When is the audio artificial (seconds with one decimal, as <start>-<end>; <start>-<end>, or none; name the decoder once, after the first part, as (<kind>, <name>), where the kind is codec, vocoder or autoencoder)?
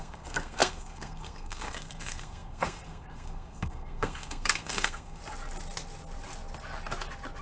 0.0-5.2 (codec, SNAC)